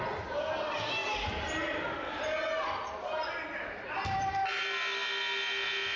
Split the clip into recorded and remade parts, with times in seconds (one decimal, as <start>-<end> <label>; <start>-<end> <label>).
0.0-6.0 recorded